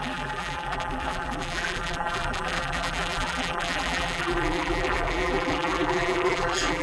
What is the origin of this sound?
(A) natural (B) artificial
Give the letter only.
B